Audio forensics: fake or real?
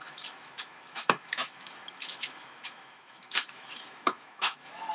fake